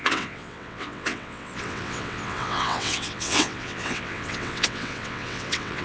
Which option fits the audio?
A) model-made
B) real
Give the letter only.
A